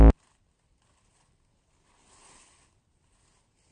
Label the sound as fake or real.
real